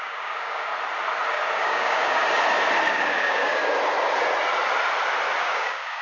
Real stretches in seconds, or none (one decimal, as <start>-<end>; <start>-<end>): 0.7-1.3; 2.2-2.9; 3.6-5.4